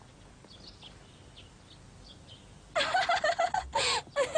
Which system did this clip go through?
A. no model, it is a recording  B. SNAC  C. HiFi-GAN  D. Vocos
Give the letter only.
A